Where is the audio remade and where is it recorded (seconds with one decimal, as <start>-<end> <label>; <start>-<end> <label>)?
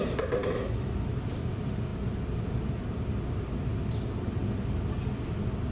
0.0-0.4 recorded; 0.4-1.1 remade; 1.1-5.7 recorded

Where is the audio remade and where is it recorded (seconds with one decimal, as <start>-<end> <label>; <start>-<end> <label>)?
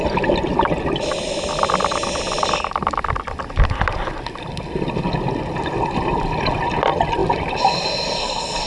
0.0-8.7 recorded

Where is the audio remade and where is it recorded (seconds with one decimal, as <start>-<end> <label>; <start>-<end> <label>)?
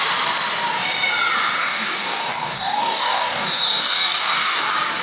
0.0-1.6 recorded; 1.6-4.6 remade; 4.6-5.0 recorded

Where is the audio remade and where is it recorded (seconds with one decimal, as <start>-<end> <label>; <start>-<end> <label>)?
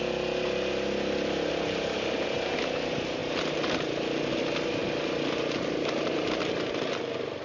0.0-7.4 recorded